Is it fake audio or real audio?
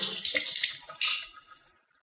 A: real